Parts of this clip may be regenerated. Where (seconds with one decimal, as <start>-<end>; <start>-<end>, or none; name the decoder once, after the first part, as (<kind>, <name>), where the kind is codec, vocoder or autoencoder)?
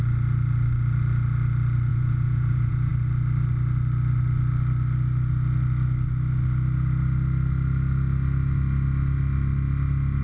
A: 1.9-2.9 (vocoder, Vocos)